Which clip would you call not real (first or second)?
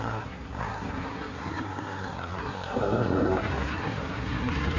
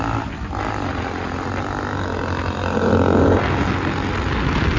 first